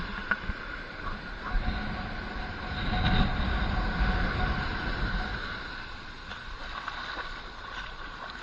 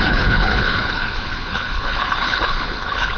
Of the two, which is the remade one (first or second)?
second